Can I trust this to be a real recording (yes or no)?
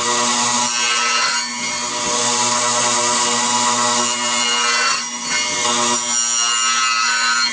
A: yes